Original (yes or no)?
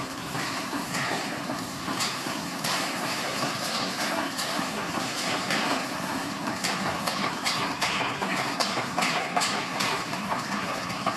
no